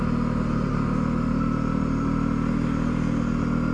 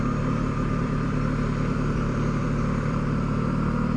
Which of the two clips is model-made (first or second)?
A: second